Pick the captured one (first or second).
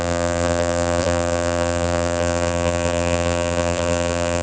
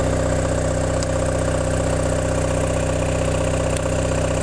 second